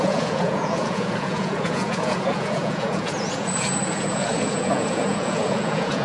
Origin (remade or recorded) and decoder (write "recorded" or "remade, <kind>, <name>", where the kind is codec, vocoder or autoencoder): remade, vocoder, Vocos